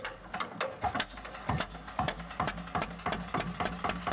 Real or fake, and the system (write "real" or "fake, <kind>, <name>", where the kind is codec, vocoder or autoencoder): real